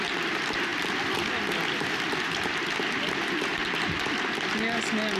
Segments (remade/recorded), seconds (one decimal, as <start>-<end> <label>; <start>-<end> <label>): 0.0-5.2 recorded